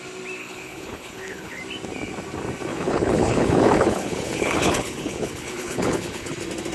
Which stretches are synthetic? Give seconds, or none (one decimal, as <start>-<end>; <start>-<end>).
0.4-1.6; 2.7-6.3